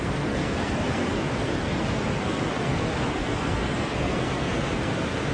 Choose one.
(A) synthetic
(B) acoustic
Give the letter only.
A